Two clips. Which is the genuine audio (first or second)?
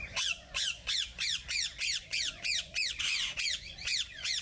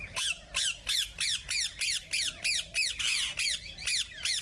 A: second